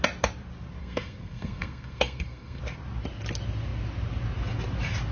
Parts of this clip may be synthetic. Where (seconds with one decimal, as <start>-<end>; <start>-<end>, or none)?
0.8-2.6